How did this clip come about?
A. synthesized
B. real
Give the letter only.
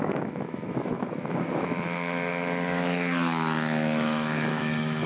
A